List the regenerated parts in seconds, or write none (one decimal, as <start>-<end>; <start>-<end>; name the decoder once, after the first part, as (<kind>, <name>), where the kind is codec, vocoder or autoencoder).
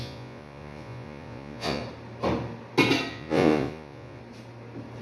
0.0-1.8 (vocoder, Vocos); 3.1-4.2